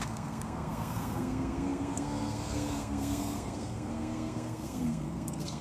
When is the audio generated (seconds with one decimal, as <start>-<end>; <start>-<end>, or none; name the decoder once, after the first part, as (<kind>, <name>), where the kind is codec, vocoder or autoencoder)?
0.0-5.6 (codec, SNAC)